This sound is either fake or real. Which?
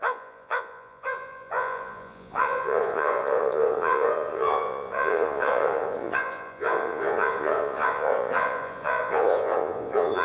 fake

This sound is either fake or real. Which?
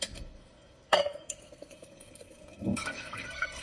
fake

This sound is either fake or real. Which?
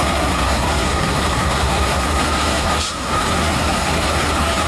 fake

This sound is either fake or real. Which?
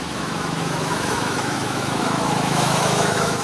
fake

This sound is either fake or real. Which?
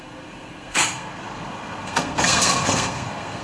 fake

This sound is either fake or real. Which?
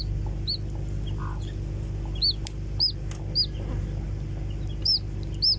real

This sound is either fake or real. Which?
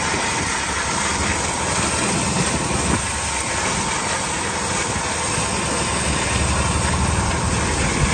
real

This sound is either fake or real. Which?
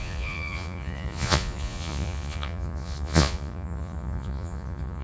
fake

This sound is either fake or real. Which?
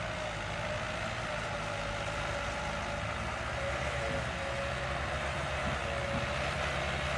real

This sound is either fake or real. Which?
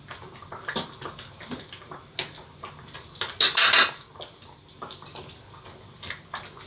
real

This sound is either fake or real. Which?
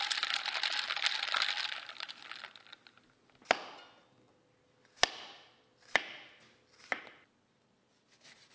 real